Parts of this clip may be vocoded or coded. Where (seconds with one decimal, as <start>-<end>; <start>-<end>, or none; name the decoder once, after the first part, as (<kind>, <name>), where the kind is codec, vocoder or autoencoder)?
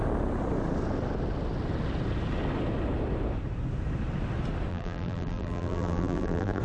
4.7-6.6 (vocoder, BigVGAN v2)